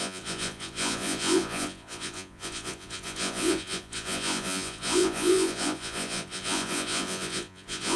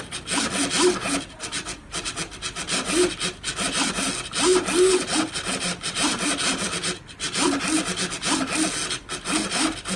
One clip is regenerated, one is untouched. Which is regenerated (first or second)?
first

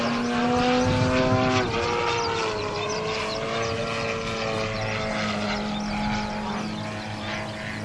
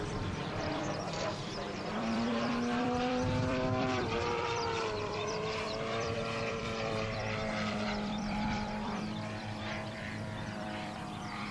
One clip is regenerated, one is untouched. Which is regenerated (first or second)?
second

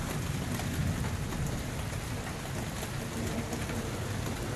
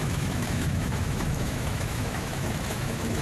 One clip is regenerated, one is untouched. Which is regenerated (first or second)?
second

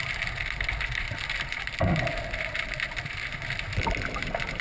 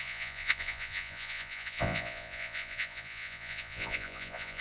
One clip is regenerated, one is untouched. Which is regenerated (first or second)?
second